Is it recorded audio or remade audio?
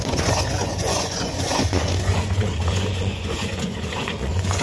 remade